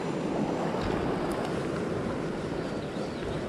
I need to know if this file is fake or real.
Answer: real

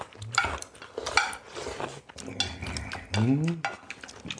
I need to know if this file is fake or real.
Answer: real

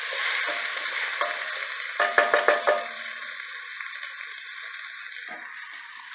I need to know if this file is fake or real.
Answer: fake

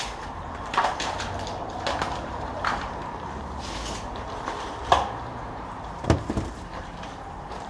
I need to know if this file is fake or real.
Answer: fake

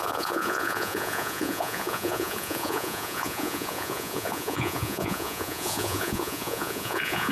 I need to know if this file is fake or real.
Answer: fake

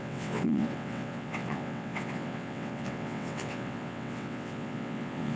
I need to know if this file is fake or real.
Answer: fake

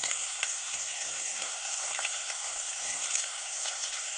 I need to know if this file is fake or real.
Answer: fake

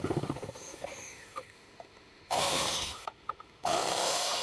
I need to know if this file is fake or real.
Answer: fake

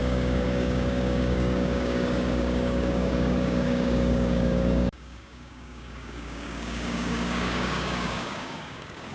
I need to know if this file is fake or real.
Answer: fake